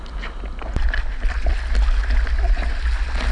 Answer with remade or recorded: recorded